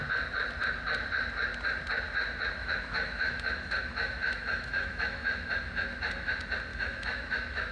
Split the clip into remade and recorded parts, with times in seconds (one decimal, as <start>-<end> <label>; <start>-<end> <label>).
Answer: 0.0-2.6 recorded; 2.6-6.3 remade; 6.3-6.7 recorded; 6.7-7.7 remade